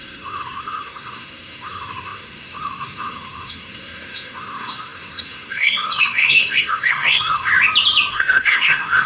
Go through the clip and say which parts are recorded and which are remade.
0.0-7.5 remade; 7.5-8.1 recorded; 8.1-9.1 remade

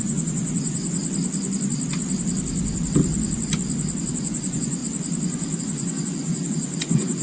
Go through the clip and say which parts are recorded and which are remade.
0.0-1.0 remade; 1.0-4.1 recorded; 4.1-4.8 remade; 4.8-5.6 recorded; 5.6-7.2 remade

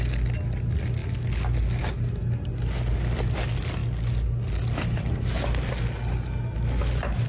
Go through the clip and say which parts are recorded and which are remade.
0.0-7.3 recorded

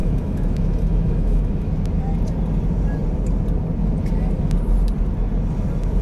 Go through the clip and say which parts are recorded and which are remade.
0.0-1.7 remade; 1.7-6.0 recorded

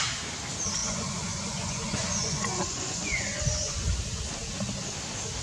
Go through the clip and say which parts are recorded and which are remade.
0.0-0.8 recorded; 0.8-4.0 remade; 4.0-5.4 recorded